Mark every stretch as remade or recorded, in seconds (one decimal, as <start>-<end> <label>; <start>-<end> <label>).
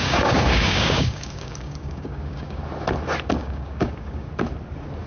0.0-2.6 remade; 2.6-3.4 recorded; 3.4-4.3 remade; 4.3-5.1 recorded